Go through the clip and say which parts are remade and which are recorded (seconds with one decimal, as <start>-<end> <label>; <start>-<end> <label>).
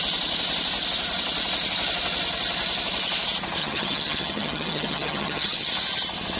0.0-3.6 recorded; 3.6-5.7 remade; 5.7-6.4 recorded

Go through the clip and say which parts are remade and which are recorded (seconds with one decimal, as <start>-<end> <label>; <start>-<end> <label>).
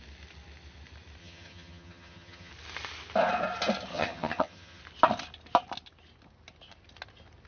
0.0-1.2 recorded; 1.2-2.5 remade; 2.5-3.9 recorded; 3.9-4.8 remade; 4.8-7.5 recorded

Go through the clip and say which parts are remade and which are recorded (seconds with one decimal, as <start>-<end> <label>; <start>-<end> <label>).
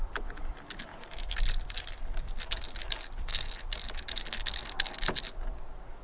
0.0-6.0 recorded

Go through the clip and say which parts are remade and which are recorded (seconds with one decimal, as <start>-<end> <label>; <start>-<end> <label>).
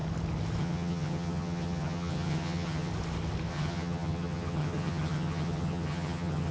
0.0-0.6 recorded; 0.6-2.9 remade; 2.9-3.5 recorded; 3.5-6.5 remade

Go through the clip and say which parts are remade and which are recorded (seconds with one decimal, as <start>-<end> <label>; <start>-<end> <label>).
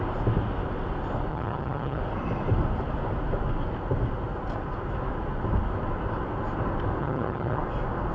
0.0-1.3 recorded; 1.3-2.0 remade; 2.0-7.0 recorded; 7.0-7.6 remade; 7.6-8.1 recorded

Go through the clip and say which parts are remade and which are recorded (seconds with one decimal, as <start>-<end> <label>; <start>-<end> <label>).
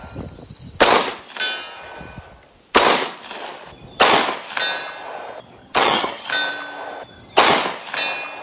0.0-5.6 recorded; 5.6-6.3 remade; 6.3-8.4 recorded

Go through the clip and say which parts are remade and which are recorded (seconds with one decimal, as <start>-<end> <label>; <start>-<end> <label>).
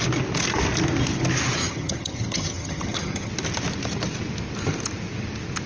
0.0-1.6 recorded; 1.6-3.3 remade; 3.3-5.7 recorded